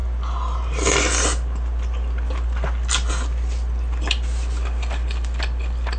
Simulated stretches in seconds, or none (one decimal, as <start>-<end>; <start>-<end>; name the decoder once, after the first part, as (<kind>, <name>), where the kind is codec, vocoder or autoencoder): none